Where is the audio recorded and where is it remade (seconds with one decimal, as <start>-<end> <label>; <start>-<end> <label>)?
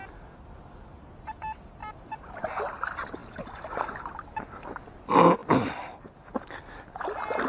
0.0-1.8 recorded; 1.8-2.6 remade; 2.6-7.5 recorded